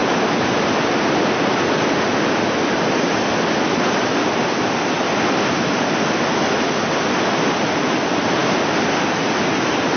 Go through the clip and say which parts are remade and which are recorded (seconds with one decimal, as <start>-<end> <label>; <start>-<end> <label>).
0.0-10.0 recorded